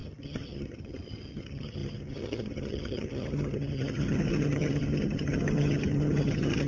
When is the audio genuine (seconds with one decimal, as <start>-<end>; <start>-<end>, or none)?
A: none